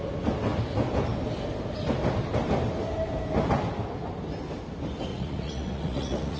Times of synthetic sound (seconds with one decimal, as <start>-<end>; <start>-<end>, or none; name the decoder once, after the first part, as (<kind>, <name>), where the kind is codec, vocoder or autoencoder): 5.1-6.4 (vocoder, Vocos)